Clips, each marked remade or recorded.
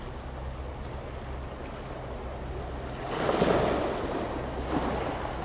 recorded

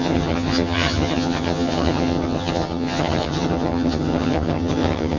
remade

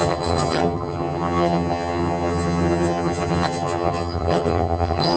remade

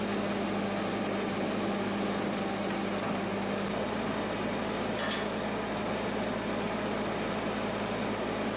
recorded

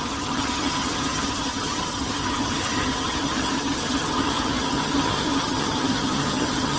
remade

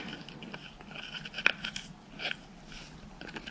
recorded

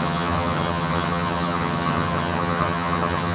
remade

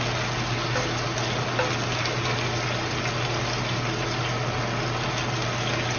recorded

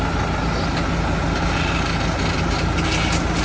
recorded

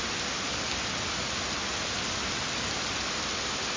recorded